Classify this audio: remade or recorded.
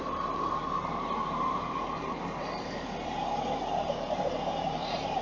remade